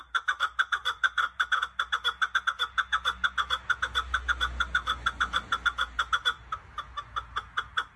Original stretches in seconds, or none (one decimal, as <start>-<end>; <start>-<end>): 0.0-0.8; 1.5-8.0